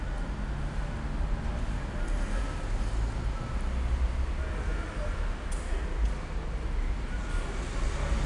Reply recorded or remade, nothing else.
recorded